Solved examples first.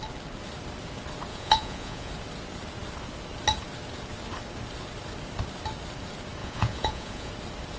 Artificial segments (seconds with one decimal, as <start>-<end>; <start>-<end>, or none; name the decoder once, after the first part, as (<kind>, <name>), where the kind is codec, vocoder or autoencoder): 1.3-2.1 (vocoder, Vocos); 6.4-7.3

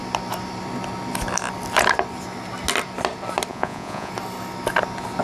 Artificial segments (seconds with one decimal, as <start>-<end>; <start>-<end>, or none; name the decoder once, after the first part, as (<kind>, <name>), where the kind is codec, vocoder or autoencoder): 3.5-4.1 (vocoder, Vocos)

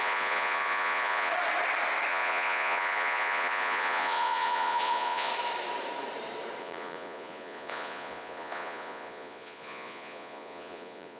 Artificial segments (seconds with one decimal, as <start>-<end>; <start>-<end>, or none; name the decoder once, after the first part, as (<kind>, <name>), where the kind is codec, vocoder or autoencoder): 0.0-1.3 (vocoder, Vocos); 2.1-5.3; 6.6-11.2

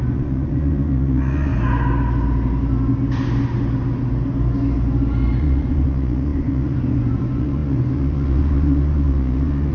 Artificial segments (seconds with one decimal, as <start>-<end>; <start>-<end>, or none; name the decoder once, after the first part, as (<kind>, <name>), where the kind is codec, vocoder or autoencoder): 0.0-1.5 (vocoder, Vocos); 5.4-9.7

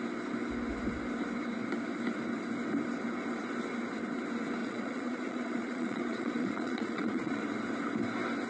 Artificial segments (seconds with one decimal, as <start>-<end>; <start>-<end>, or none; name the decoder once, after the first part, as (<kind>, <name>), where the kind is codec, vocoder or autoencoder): 4.6-7.4 (vocoder, Vocos)

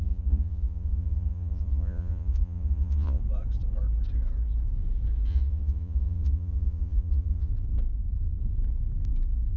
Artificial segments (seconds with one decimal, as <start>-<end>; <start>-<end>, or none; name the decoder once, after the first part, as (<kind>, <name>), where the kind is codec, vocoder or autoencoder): 0.0-3.2 (vocoder, Vocos); 5.3-7.5

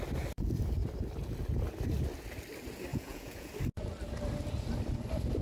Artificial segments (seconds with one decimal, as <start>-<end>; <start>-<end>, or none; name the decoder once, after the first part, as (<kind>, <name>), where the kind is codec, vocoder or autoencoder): 2.9-3.5 (vocoder, Vocos)

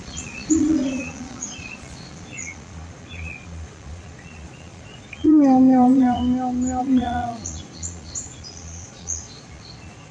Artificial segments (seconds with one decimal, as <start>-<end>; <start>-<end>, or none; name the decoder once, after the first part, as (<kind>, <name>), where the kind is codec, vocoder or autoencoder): 0.0-6.2 (vocoder, Vocos); 6.8-10.1